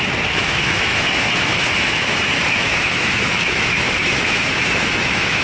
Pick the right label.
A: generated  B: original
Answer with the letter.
A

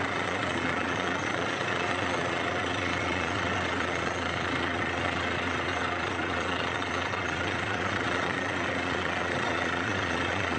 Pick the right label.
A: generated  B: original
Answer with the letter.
A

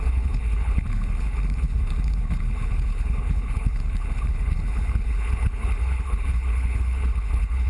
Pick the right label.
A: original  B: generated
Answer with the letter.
B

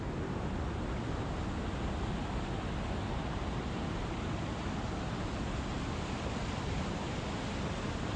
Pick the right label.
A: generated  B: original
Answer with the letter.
B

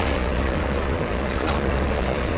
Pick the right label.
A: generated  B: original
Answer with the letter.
A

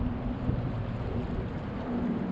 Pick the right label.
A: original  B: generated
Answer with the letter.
A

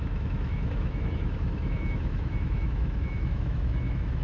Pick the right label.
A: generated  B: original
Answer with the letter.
A